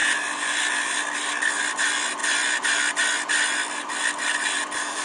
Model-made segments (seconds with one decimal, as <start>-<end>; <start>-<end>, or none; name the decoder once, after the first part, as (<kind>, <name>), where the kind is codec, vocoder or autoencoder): none